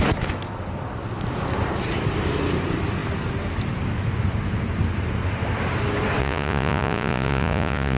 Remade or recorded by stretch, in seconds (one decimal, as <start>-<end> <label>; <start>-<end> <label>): 0.0-6.2 recorded; 6.2-8.0 remade